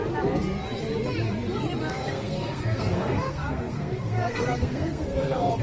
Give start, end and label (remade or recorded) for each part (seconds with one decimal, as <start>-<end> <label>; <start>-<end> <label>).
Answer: 0.0-1.8 recorded; 1.8-5.6 remade